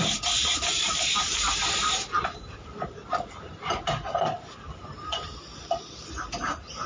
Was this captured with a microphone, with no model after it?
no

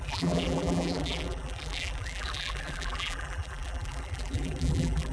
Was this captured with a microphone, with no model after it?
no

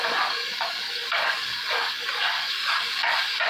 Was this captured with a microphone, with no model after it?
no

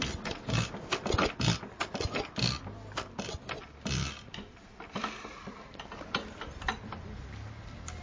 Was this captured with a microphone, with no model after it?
yes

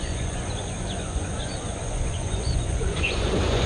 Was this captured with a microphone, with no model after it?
no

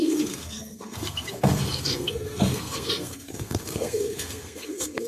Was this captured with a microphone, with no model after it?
no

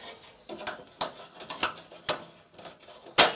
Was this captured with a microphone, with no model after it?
yes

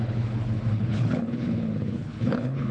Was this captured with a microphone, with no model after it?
no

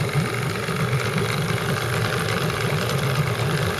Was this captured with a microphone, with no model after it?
yes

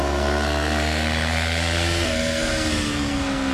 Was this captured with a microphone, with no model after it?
no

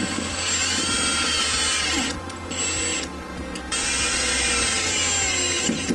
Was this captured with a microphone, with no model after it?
yes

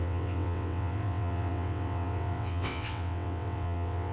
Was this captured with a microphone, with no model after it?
no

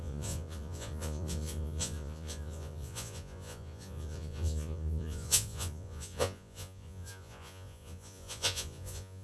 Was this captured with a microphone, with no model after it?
no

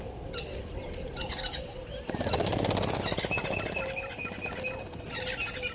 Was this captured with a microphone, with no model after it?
yes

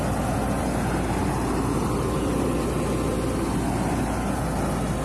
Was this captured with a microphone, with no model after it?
yes